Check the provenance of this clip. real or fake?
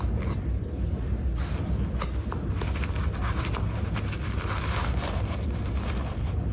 real